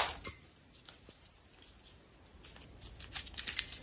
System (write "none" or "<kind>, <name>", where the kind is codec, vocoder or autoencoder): none